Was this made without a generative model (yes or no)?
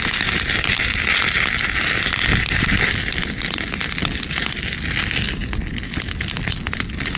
yes